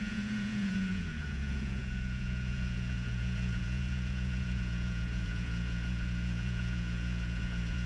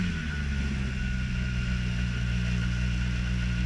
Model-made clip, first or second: first